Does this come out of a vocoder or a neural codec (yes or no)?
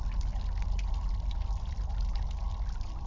no